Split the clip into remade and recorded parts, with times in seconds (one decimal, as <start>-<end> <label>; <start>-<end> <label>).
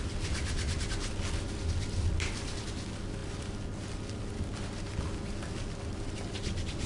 0.0-6.9 recorded